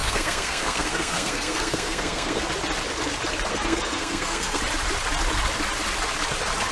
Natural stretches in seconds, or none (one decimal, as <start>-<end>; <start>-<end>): 2.4-3.5; 4.6-6.7